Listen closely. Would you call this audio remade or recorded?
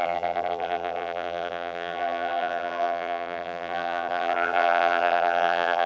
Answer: remade